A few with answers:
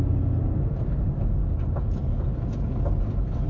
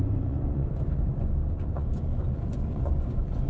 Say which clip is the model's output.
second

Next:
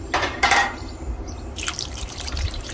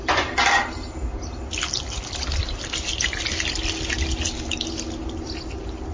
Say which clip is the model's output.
first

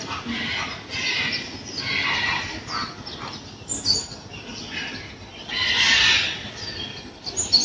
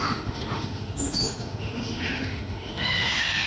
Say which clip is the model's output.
second